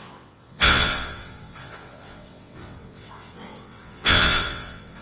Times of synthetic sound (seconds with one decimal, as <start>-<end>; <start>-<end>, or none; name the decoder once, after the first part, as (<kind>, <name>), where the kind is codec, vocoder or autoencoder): 0.0-5.0 (vocoder, WaveNeXt)